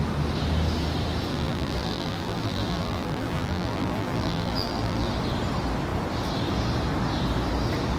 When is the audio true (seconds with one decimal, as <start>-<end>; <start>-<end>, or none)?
0.0-1.3; 5.1-8.0